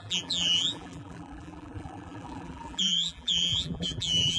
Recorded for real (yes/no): no